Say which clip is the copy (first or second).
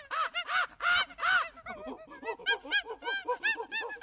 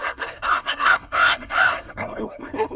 second